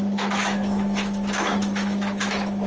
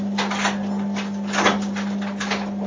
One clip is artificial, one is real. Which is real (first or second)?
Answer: second